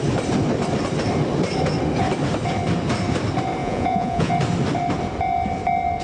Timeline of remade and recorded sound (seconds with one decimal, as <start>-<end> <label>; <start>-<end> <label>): 0.0-3.6 recorded; 3.6-4.3 remade; 4.3-6.0 recorded